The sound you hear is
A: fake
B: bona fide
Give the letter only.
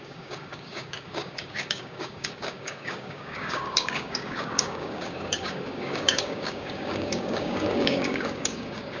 A